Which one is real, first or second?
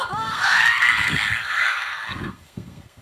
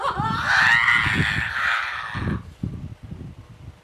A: second